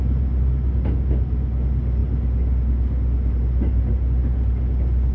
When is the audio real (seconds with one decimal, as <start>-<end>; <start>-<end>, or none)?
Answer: 0.0-5.1